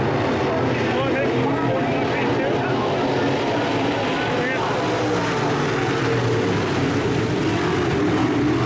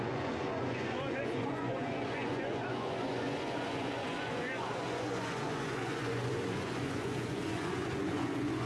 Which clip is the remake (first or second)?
second